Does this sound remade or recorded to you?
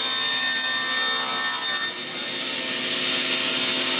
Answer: recorded